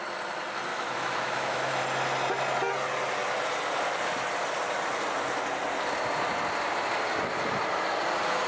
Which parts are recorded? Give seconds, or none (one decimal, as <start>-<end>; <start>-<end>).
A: 0.0-0.7; 1.7-8.5